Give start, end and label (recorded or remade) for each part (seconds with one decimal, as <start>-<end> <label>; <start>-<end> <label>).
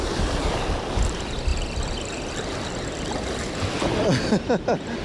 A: 0.0-5.0 recorded